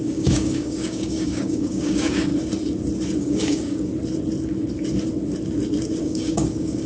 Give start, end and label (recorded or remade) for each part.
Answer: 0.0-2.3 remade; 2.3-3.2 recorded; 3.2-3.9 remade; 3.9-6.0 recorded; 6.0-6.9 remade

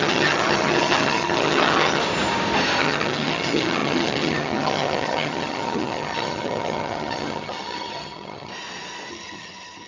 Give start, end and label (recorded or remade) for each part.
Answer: 0.0-2.0 remade; 2.0-2.8 recorded; 2.8-8.5 remade; 8.5-9.1 recorded; 9.1-9.9 remade